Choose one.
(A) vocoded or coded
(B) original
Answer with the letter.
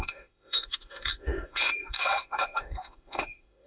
A